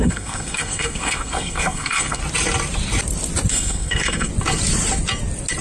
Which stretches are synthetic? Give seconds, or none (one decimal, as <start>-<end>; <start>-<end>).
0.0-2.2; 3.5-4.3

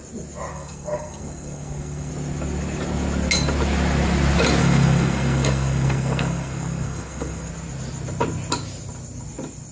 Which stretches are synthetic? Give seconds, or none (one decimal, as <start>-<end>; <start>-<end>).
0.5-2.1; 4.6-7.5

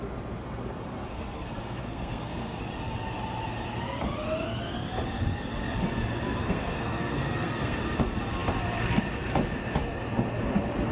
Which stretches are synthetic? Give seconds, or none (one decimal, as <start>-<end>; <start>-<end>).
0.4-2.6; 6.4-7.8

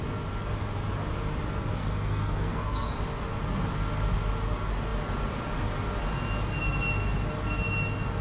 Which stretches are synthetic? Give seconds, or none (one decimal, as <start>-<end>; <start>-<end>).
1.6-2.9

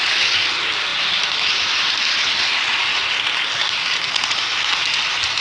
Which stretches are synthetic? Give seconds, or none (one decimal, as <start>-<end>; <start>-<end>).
none